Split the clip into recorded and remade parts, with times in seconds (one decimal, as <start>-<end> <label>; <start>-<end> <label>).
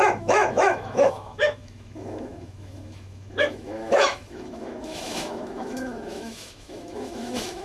0.0-7.6 remade